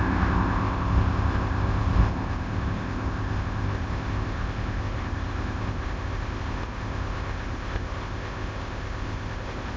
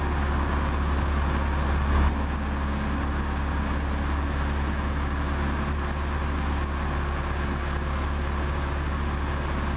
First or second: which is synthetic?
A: first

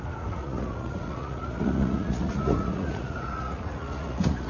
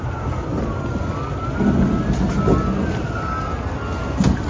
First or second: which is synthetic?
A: first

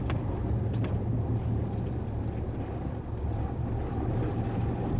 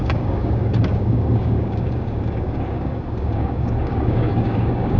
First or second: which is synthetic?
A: second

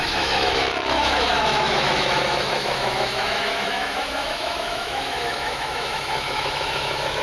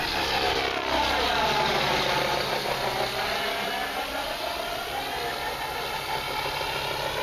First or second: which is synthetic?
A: first